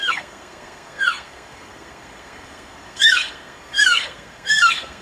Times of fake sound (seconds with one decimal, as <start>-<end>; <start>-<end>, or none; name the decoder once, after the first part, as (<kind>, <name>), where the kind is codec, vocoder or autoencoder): 0.0-5.0 (codec, SNAC)